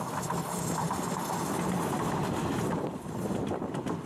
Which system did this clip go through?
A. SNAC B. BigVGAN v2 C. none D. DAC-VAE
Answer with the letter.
C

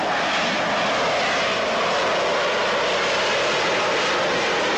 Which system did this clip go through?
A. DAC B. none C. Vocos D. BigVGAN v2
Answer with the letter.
B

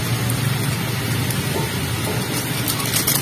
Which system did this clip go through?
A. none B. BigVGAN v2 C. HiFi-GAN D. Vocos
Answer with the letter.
A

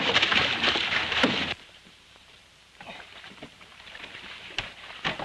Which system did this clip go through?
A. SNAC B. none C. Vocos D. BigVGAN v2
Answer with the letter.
D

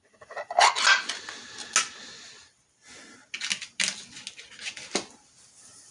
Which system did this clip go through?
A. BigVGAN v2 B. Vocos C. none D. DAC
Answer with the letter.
C